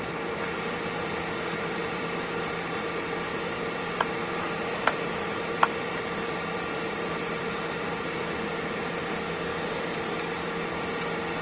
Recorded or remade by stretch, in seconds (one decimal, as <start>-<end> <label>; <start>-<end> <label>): 0.0-1.8 recorded; 1.8-2.4 remade; 2.4-3.3 recorded; 3.3-7.3 remade; 7.3-9.5 recorded; 9.5-10.0 remade; 10.0-11.4 recorded